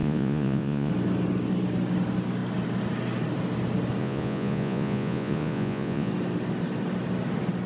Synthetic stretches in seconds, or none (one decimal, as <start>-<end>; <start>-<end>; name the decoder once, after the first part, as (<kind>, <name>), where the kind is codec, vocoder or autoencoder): 0.0-0.9 (vocoder, Vocos); 4.0-6.1